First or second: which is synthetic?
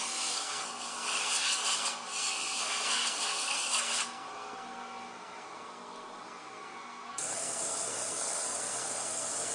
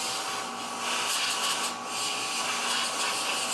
first